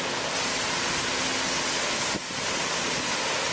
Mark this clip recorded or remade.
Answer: recorded